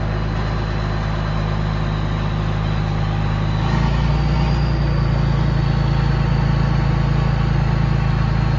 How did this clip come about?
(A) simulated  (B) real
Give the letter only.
B